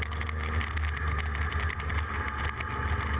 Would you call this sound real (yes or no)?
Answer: yes